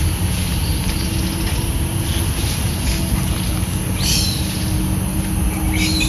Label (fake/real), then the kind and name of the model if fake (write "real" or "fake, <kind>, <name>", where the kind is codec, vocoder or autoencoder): real